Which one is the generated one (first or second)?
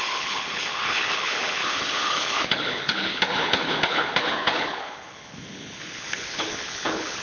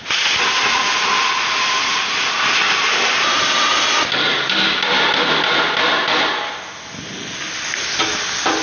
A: first